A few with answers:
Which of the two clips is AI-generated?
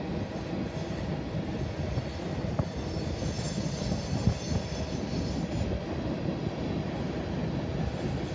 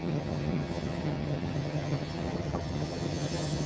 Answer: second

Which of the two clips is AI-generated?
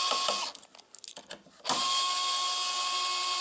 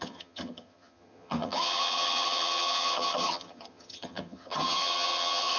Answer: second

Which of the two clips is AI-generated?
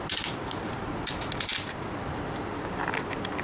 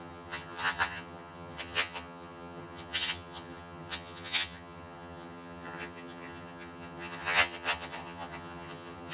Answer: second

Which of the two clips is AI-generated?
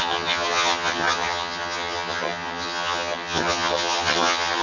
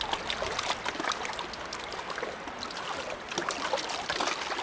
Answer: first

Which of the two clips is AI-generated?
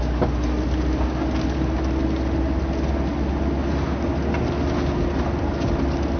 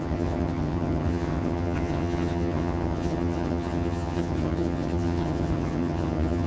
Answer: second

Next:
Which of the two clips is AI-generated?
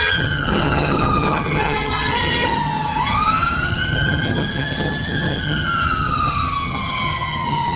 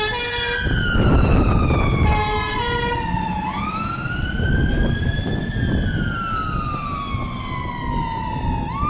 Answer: first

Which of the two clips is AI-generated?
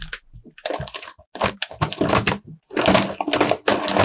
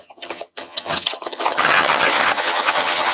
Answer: second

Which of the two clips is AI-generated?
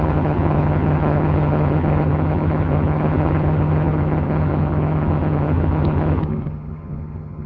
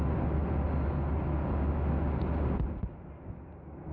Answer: first